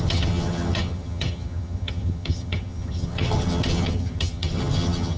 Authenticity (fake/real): fake